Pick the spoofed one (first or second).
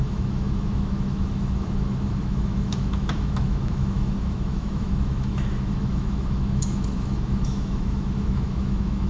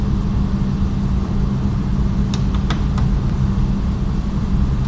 first